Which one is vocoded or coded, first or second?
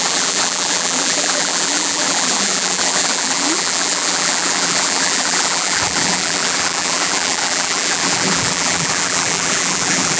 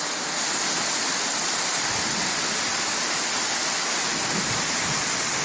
first